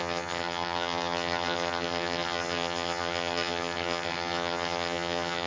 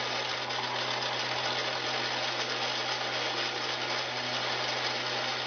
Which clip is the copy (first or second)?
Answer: first